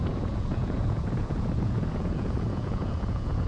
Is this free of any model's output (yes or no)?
no